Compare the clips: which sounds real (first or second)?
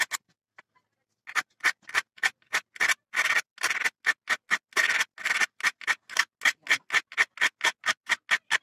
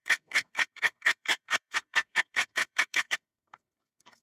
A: first